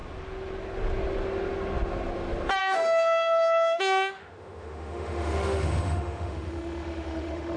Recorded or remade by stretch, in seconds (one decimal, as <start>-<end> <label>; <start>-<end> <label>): 0.0-2.6 recorded; 2.6-7.6 remade